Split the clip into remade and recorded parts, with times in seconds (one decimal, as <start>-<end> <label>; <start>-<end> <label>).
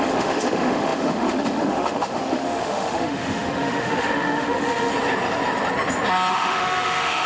0.0-4.9 remade; 4.9-6.3 recorded; 6.3-7.3 remade